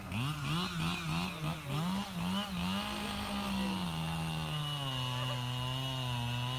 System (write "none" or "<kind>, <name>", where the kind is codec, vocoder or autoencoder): none